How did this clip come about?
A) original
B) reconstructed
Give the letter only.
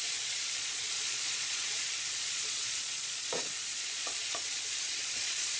B